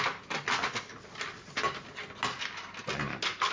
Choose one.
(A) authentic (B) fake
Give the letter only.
A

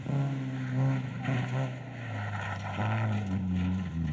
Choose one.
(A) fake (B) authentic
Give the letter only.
B